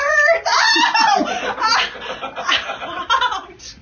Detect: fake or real real